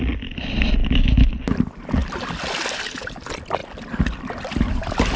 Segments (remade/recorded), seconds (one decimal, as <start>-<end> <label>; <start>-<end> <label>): 0.0-0.8 recorded; 0.8-1.3 remade; 1.3-5.2 recorded